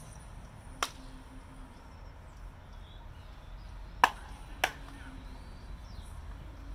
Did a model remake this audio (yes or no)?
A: no